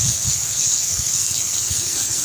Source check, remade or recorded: remade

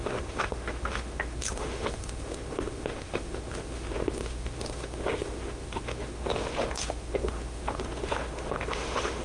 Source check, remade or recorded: remade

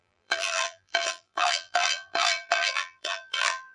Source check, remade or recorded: remade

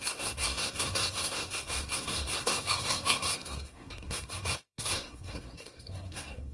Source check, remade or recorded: remade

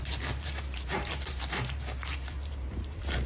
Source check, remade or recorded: remade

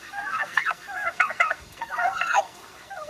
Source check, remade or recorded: remade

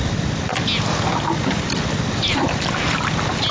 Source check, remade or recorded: recorded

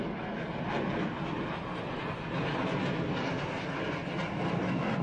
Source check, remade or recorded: recorded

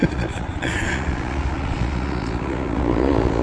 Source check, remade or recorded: remade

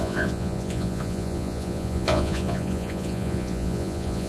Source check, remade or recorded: remade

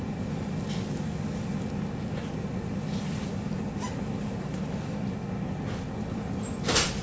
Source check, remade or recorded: recorded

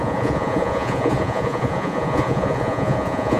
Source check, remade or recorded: remade